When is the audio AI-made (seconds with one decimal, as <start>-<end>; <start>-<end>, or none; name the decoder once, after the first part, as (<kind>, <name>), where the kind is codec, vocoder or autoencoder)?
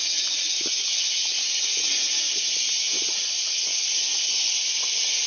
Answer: none